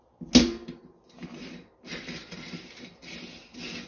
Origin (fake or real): real